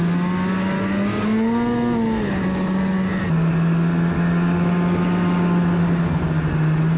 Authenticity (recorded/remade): recorded